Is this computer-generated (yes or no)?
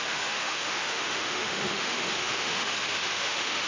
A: yes